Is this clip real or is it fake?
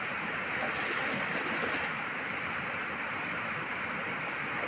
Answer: real